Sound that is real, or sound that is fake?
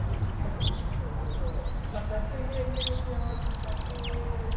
real